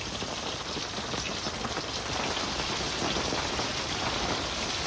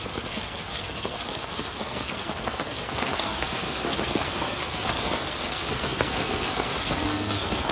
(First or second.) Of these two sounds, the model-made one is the second